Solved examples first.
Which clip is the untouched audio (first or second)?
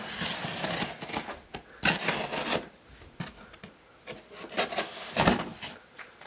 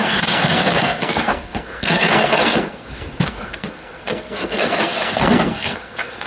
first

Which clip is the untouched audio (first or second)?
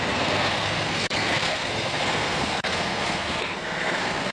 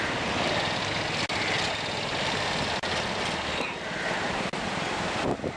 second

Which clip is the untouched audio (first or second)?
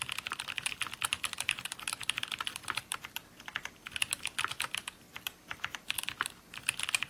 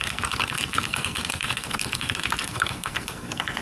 first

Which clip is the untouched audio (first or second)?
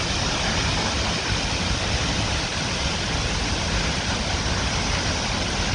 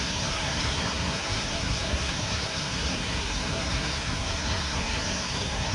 first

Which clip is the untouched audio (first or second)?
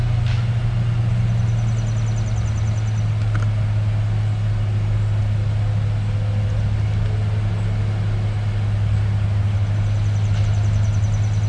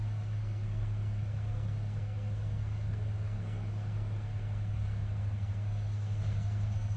first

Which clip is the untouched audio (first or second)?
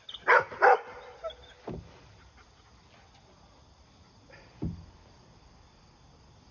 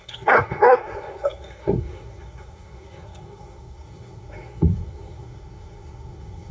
first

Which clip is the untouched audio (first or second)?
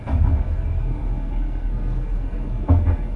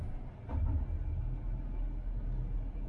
second